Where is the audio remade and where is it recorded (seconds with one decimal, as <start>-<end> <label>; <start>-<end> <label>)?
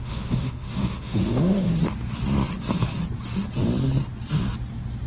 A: 0.0-1.7 remade; 1.7-5.1 recorded